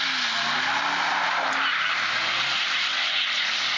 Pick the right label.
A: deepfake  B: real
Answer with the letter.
B